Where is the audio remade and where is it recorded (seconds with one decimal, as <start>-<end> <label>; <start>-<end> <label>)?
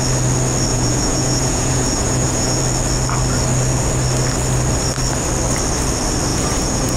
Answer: 0.0-0.7 recorded; 0.7-2.6 remade; 2.6-6.3 recorded; 6.3-7.0 remade